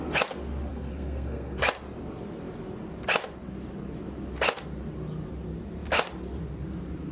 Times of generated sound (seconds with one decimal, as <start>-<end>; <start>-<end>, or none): 0.7-1.6